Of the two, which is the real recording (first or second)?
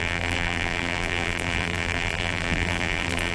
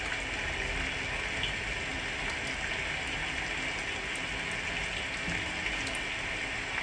second